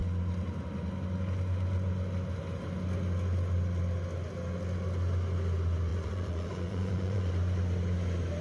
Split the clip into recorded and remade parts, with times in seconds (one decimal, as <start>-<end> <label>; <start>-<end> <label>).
0.0-5.9 recorded; 5.9-7.3 remade; 7.3-8.4 recorded